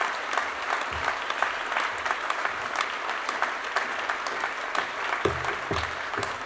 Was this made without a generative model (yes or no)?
yes